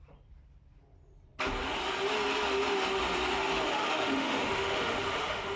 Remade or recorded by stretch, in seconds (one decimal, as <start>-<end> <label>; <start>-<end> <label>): 0.0-3.7 recorded; 3.7-5.6 remade